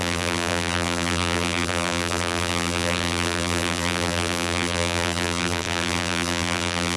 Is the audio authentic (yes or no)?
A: no